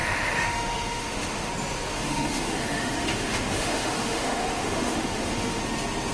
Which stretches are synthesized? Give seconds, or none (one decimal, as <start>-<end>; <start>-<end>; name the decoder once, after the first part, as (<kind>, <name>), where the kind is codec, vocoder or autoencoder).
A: 0.0-1.5 (autoencoder, DAC-VAE); 1.9-5.6